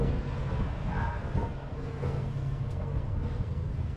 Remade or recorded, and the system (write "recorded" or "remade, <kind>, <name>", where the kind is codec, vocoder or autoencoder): remade, codec, SNAC